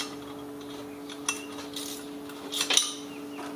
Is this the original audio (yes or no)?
yes